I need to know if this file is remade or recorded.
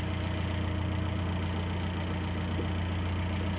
recorded